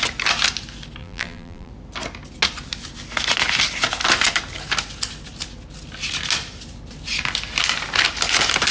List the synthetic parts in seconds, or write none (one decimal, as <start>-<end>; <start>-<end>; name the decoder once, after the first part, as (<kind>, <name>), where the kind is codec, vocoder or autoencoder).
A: 1.0-1.7 (vocoder, BigVGAN v2)